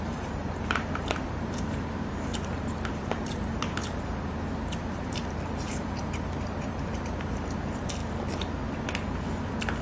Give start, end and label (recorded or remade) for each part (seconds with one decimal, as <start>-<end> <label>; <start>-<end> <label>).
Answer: 0.0-8.0 remade; 8.0-9.8 recorded